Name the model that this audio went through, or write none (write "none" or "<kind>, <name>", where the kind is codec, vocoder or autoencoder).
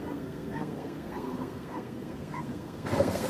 codec, SNAC